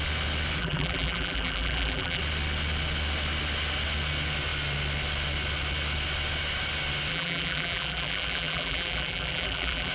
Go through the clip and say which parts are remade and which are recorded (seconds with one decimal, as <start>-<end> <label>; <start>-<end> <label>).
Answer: 0.0-0.6 recorded; 0.6-2.2 remade; 2.2-7.1 recorded; 7.1-9.9 remade